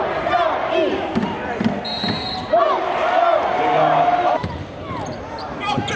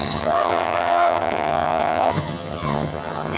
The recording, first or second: first